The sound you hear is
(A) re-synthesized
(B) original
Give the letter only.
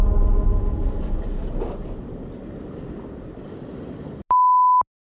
B